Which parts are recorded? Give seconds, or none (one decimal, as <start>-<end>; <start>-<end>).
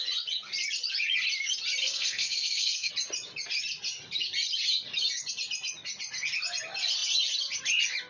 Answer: 0.0-1.8; 2.9-8.1